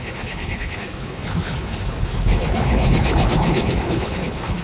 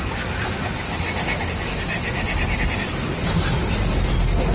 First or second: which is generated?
first